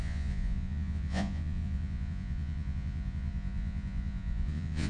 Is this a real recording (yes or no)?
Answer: no